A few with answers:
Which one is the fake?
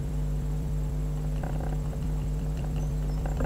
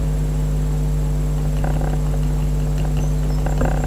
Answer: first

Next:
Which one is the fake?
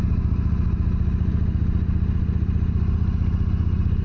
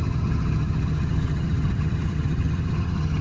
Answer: second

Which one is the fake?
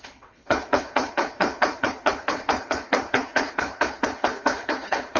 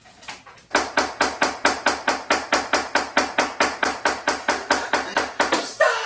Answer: first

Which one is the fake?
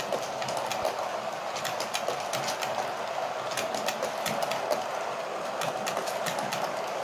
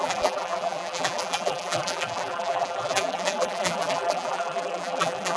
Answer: second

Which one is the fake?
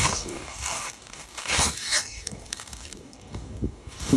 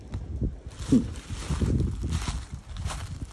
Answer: first